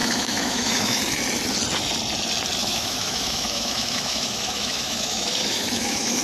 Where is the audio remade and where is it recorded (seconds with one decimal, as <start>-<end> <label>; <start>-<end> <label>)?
0.0-1.0 remade; 1.0-2.6 recorded; 2.6-6.2 remade